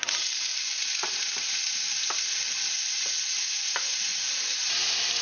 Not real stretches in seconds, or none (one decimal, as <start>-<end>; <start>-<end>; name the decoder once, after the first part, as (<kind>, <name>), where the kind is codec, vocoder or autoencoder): none